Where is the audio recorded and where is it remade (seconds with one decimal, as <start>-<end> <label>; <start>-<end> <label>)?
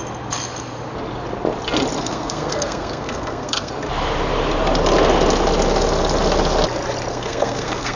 0.0-2.0 recorded; 2.0-3.7 remade; 3.7-7.1 recorded; 7.1-8.0 remade